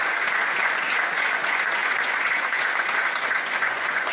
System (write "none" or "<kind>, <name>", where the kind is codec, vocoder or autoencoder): vocoder, Vocos